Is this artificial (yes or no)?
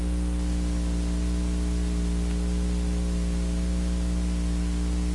no